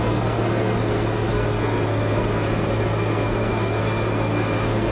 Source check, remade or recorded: remade